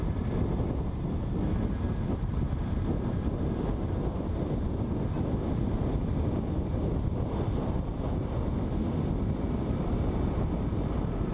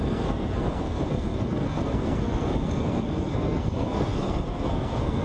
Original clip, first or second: first